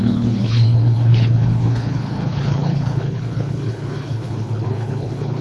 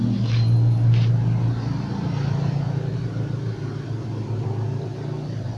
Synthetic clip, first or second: first